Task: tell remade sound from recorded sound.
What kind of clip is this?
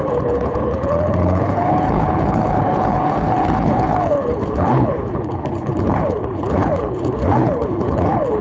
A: remade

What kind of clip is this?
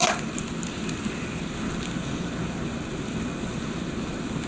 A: recorded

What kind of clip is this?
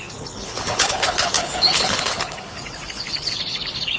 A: remade